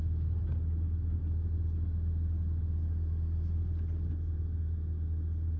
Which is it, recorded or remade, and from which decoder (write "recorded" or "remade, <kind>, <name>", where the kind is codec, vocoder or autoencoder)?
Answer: recorded